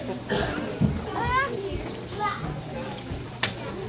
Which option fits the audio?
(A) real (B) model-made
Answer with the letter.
A